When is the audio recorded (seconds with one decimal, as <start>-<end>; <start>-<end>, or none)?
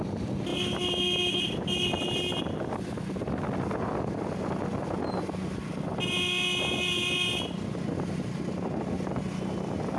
0.0-10.0